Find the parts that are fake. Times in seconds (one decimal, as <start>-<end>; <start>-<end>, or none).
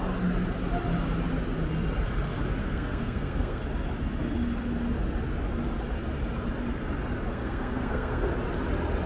2.6-3.6; 7.3-8.3